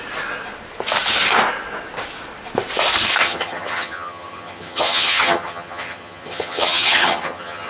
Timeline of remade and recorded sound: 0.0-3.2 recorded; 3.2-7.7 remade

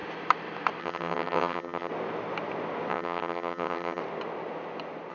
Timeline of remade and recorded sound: 0.0-0.8 recorded; 0.8-1.9 remade; 1.9-2.9 recorded; 2.9-4.0 remade; 4.0-5.1 recorded

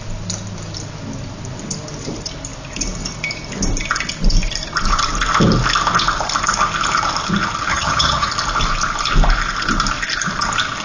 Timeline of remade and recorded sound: 0.0-7.7 recorded; 7.7-8.3 remade; 8.3-10.8 recorded

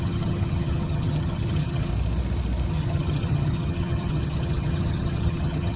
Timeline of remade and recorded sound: 0.0-1.9 remade; 1.9-2.7 recorded; 2.7-5.8 remade

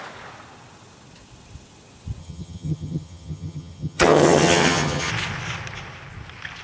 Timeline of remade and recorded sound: 0.0-2.2 recorded; 2.2-5.1 remade; 5.1-6.6 recorded

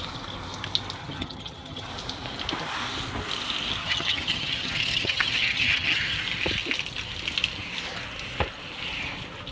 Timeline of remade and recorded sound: 0.0-1.0 recorded; 1.0-1.9 remade; 1.9-3.8 recorded; 3.8-6.2 remade; 6.2-9.5 recorded

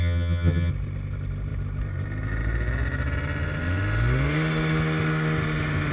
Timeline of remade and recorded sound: 0.0-0.7 remade; 0.7-5.9 recorded

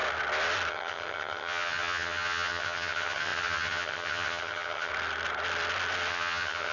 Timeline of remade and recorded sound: 0.0-0.7 recorded; 0.7-4.9 remade; 4.9-6.1 recorded; 6.1-6.7 remade